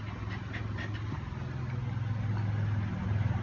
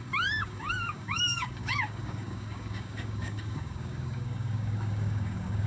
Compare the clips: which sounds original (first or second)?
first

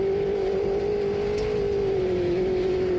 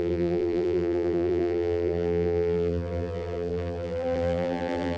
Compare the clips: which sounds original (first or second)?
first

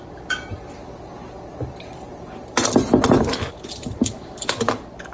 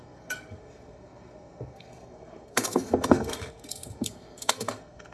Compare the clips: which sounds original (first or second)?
first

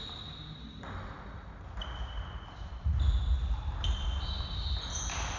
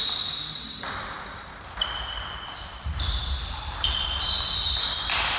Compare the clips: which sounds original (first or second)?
first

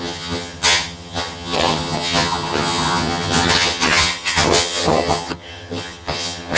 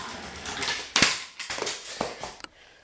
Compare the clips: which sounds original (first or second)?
second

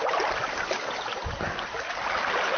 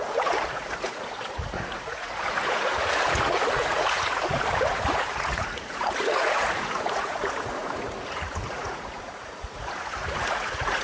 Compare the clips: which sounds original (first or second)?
first